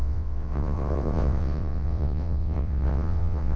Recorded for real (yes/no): no